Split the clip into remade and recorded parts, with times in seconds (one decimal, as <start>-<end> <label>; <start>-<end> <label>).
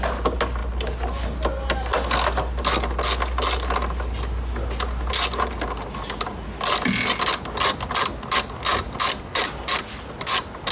0.0-10.7 recorded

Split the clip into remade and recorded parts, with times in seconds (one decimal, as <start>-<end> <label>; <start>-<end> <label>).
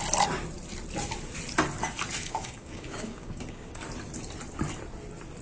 0.0-2.2 recorded; 2.2-3.8 remade; 3.8-5.4 recorded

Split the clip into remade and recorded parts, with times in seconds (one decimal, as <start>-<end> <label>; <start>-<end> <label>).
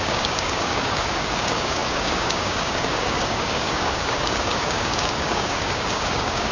0.0-6.5 remade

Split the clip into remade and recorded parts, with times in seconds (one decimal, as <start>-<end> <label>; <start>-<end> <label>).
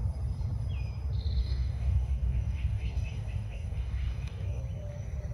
0.0-1.4 recorded; 1.4-4.6 remade; 4.6-5.3 recorded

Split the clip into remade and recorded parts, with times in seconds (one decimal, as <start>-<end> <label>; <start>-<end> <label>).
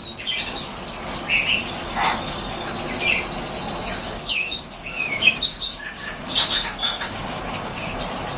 0.0-3.8 recorded; 3.8-8.0 remade; 8.0-8.4 recorded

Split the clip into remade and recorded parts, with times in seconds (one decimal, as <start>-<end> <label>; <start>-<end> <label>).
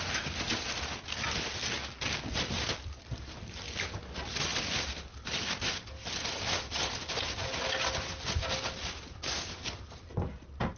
0.0-1.8 recorded; 1.8-2.3 remade; 2.3-10.8 recorded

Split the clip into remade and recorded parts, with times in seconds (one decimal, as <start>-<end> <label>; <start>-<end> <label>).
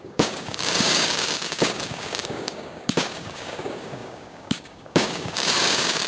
0.0-6.1 remade